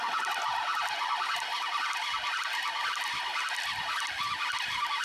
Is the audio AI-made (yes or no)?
yes